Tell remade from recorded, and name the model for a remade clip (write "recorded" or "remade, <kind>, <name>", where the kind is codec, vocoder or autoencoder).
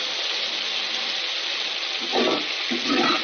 recorded